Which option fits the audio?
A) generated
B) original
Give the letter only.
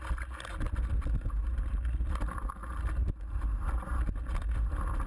B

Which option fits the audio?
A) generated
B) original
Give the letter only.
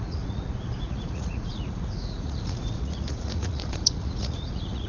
A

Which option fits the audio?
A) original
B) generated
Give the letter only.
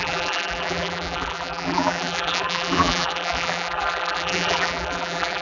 B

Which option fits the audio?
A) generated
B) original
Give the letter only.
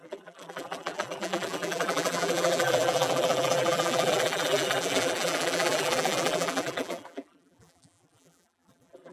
A